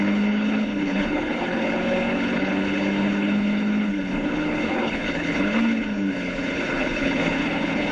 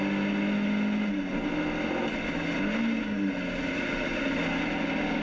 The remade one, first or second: first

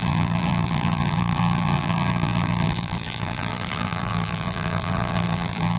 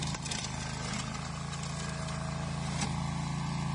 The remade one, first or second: first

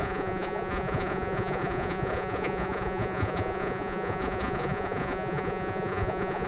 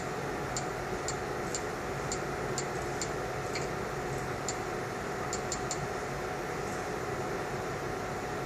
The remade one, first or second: first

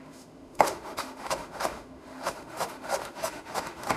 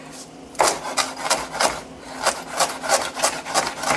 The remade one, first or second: first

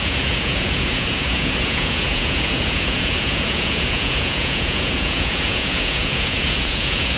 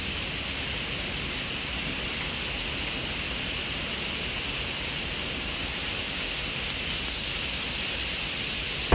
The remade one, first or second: first